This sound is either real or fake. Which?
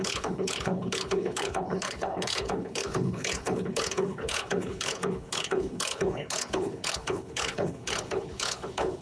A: fake